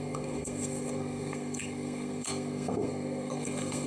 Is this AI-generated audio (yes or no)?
yes